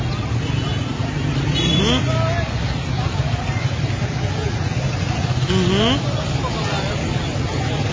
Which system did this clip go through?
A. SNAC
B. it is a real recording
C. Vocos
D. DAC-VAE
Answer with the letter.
B